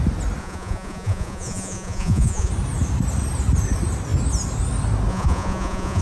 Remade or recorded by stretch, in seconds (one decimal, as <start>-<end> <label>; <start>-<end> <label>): 0.0-0.4 recorded; 0.4-2.5 remade; 2.5-5.1 recorded; 5.1-6.0 remade